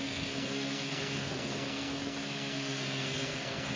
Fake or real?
fake